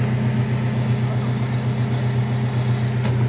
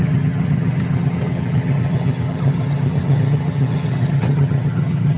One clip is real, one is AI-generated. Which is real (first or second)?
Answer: first